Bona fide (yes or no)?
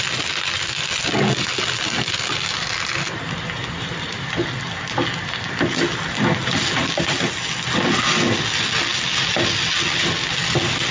yes